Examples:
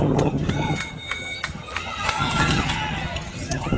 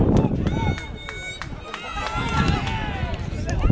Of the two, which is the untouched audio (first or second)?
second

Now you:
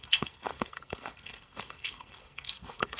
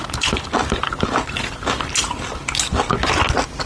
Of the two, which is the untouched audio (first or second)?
second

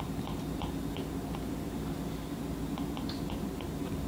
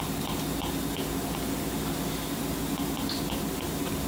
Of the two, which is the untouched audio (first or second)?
second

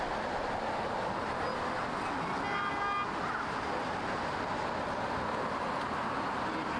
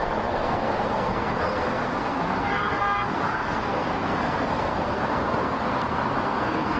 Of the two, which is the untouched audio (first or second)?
first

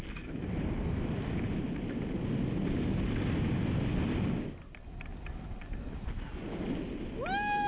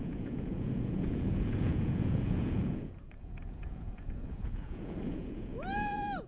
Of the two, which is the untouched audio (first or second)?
first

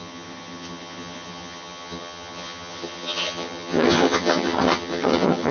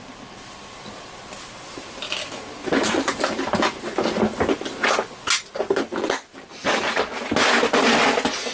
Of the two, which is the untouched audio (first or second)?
second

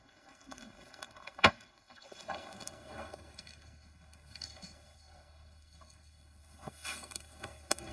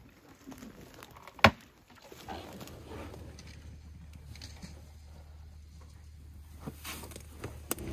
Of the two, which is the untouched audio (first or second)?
second